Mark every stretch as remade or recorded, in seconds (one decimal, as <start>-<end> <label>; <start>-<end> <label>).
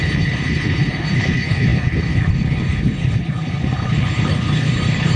0.0-5.2 remade